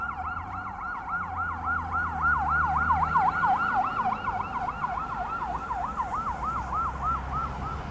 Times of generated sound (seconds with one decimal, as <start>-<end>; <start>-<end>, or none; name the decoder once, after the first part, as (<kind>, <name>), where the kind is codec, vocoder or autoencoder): none